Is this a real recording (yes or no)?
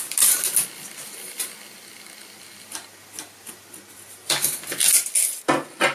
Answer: yes